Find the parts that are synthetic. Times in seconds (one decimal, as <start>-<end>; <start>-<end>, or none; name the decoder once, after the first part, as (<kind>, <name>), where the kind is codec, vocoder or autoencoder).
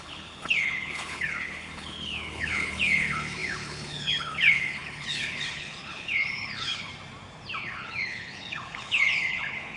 0.0-6.9 (codec, HILCodec); 7.6-9.8